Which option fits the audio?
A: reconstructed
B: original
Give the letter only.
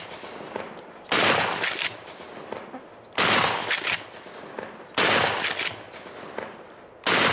B